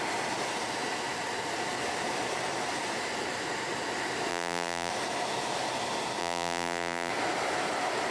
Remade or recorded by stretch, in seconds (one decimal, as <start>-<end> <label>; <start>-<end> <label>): 0.0-4.3 recorded; 4.3-4.9 remade; 4.9-6.2 recorded; 6.2-7.1 remade; 7.1-8.1 recorded